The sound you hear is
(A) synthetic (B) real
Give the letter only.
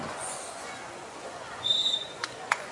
A